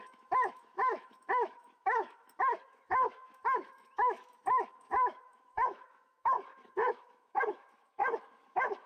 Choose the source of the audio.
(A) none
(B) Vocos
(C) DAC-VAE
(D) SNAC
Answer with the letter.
C